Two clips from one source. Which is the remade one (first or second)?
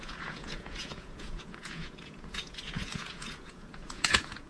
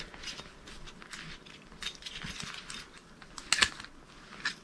first